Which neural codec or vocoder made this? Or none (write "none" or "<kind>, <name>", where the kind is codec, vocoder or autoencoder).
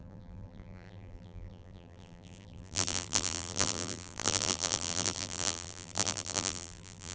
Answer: vocoder, BigVGAN v2